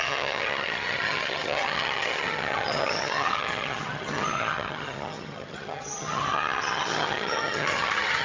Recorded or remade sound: remade